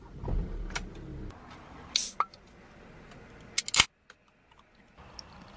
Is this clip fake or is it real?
real